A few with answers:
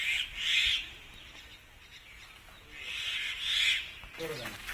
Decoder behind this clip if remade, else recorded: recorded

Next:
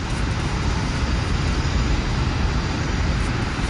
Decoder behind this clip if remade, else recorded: recorded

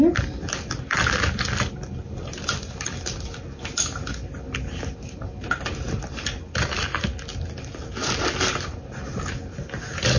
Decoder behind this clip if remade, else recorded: recorded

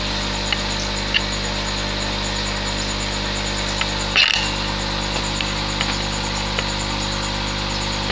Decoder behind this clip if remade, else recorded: recorded